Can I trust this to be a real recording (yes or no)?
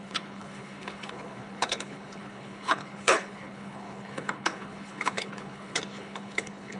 no